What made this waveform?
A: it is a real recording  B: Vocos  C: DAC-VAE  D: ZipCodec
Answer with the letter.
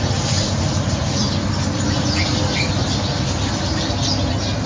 A